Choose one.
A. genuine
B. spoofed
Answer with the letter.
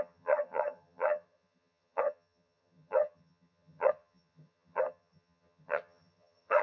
B